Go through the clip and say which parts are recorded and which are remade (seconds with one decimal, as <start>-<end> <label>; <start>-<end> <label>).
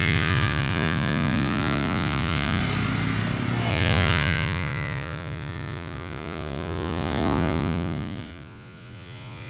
0.0-2.6 remade; 2.6-3.7 recorded; 3.7-9.5 remade